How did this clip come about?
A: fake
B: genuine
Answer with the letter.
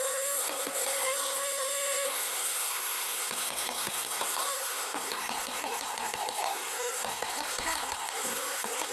A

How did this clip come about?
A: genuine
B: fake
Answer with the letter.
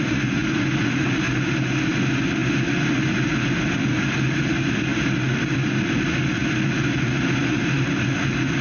A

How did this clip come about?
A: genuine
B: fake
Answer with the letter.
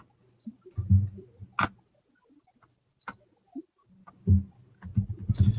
A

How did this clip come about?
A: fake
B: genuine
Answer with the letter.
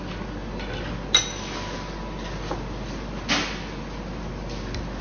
B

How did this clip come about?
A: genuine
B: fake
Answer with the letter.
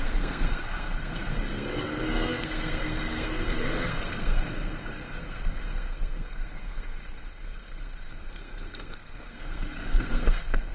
B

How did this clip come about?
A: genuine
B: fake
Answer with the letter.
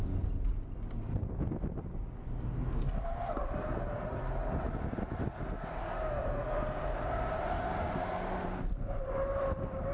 A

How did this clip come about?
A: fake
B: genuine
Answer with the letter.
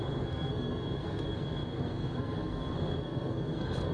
A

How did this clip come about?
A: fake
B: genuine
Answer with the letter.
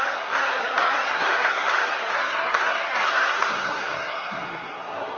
A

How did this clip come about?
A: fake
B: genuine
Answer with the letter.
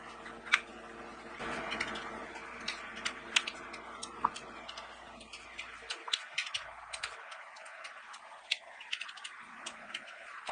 B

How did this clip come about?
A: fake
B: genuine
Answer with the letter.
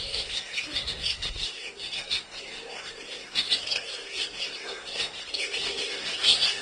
A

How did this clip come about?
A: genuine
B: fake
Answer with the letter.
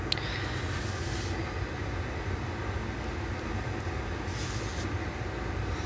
A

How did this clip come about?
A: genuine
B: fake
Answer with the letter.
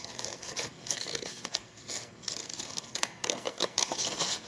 B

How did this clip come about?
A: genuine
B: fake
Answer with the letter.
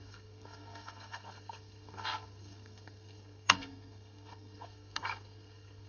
B